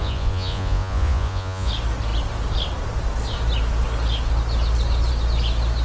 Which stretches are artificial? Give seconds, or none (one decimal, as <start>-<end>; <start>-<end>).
0.0-1.7